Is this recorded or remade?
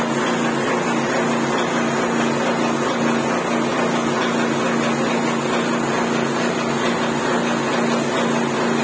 recorded